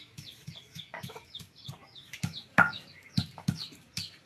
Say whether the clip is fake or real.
fake